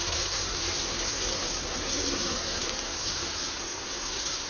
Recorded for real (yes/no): no